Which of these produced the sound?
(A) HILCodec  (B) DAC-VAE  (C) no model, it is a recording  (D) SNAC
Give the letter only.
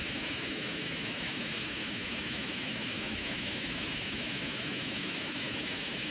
B